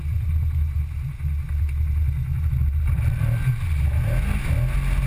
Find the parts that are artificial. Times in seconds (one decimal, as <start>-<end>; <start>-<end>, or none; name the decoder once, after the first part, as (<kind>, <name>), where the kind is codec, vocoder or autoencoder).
none